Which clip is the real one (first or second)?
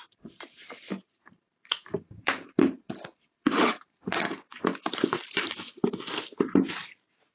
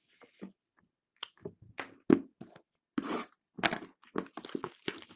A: second